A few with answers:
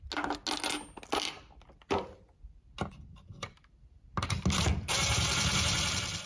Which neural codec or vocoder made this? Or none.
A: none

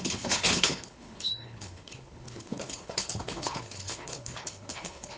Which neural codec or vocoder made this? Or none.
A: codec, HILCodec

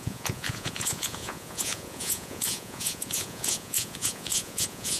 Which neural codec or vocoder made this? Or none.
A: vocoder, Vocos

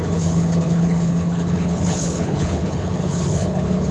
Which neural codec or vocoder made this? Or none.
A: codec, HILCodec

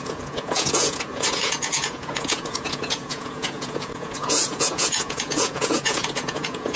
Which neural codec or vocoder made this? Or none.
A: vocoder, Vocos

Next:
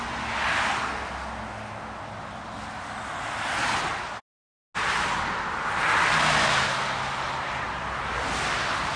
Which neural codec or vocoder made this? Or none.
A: none